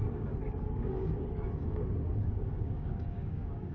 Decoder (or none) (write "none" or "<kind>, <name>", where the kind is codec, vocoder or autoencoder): codec, DAC